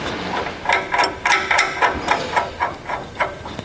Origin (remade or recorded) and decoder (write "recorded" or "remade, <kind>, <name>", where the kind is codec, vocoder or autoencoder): recorded